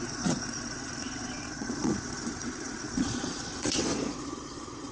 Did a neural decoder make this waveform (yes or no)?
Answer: yes